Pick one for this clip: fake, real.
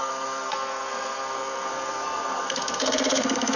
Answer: fake